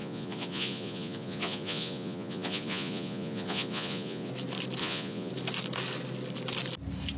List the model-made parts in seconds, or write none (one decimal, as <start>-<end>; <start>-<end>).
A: 0.0-4.3; 4.8-5.3